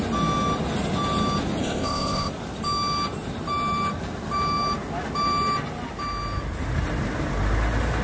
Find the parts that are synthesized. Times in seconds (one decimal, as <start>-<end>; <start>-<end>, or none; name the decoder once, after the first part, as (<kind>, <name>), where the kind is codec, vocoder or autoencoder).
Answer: 1.6-2.3 (codec, ZipCodec)